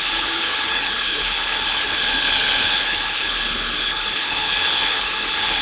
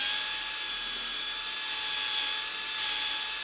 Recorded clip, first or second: second